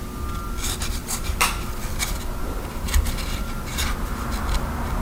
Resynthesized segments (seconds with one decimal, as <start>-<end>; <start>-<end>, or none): 1.0-1.5; 2.4-3.6